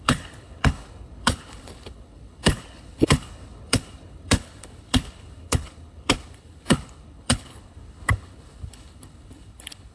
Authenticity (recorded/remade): remade